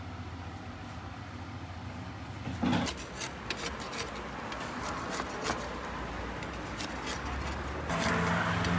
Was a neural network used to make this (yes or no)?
no